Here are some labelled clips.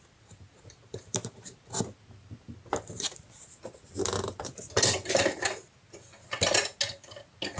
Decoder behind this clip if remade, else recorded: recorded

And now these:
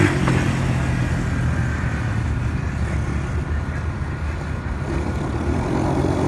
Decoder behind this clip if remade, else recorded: recorded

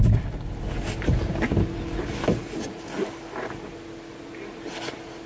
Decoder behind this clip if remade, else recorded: recorded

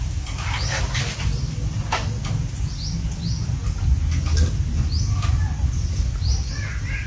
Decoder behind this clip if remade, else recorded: recorded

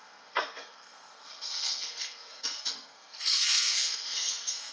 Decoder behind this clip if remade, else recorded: remade, codec, SNAC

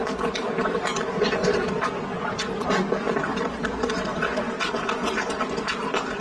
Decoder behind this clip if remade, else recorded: remade, vocoder, BigVGAN v2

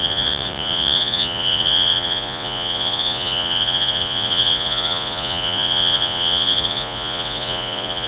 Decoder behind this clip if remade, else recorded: remade, vocoder, Vocos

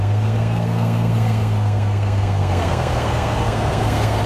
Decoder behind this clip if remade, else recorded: remade, codec, SNAC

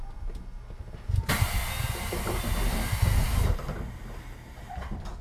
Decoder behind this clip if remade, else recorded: recorded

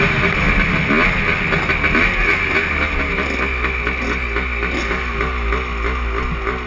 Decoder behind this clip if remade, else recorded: recorded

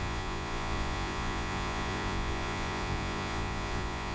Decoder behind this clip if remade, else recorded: remade, vocoder, Vocos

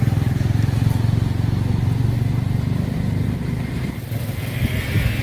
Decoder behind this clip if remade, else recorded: recorded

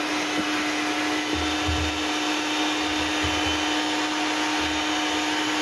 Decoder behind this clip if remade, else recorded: recorded